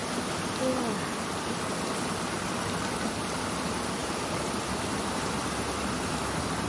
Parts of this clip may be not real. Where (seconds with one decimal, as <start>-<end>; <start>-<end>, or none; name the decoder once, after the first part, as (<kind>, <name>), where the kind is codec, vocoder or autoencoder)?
4.0-6.1 (vocoder, BigVGAN v2)